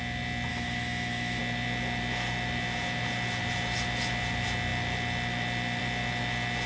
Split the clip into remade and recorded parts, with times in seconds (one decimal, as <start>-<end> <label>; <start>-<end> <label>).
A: 0.0-0.5 recorded; 0.5-1.4 remade; 1.4-6.7 recorded